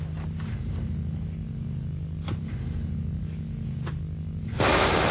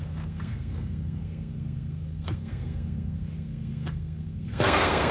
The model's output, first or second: second